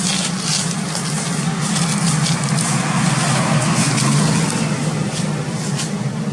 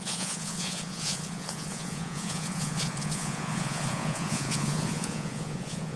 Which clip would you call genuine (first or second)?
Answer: first